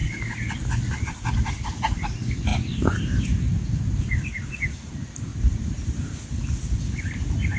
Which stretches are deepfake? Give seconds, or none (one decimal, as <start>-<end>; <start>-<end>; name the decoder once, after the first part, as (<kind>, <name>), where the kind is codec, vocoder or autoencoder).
5.3-6.1 (vocoder, BigVGAN v2)